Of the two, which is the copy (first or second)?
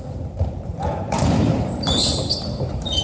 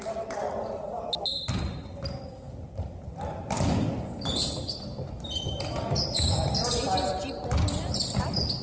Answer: first